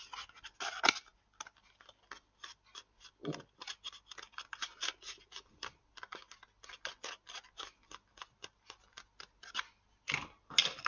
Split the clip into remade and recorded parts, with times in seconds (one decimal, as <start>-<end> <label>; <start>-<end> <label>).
0.0-10.9 recorded